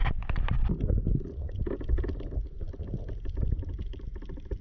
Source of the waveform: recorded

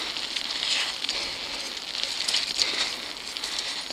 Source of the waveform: recorded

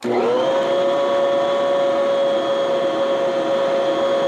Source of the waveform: recorded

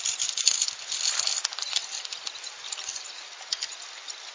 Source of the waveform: recorded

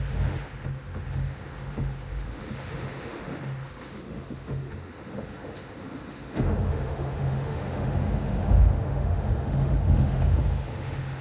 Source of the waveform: remade